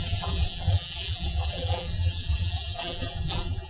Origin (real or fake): fake